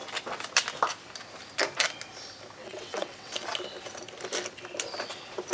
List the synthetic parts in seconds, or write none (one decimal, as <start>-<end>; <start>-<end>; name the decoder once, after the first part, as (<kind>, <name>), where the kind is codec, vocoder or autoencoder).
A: 2.6-3.3 (vocoder, WaveNeXt)